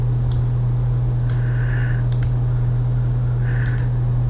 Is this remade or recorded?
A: recorded